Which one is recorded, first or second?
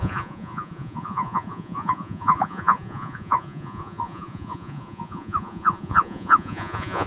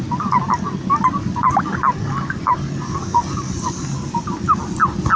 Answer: second